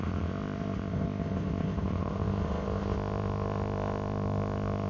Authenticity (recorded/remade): remade